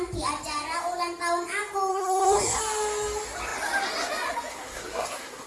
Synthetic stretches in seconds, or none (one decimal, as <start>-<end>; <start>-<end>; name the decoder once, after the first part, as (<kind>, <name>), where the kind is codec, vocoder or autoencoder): 1.9-2.6 (codec, SNAC); 4.5-5.5